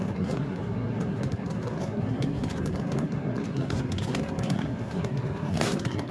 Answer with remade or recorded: remade